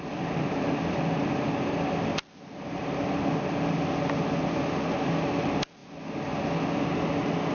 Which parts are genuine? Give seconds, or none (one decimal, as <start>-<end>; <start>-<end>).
0.0-7.5